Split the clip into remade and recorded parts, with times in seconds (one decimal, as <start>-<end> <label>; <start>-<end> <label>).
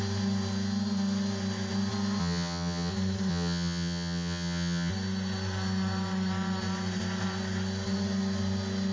0.0-2.2 recorded; 2.2-2.9 remade; 2.9-3.3 recorded; 3.3-4.9 remade; 4.9-8.9 recorded